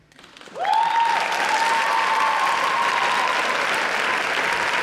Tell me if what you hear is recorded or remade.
recorded